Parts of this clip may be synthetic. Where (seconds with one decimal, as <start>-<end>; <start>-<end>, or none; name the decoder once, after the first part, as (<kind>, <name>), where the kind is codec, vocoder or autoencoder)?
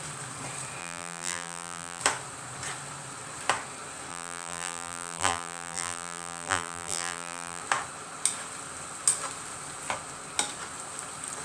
0.8-2.0 (vocoder, BigVGAN v2); 4.1-7.6